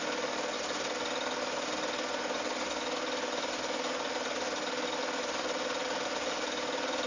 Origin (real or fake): real